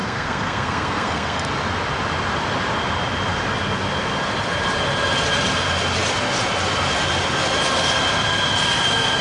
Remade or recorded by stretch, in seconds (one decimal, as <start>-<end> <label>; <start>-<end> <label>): 0.0-1.5 remade; 1.5-9.2 recorded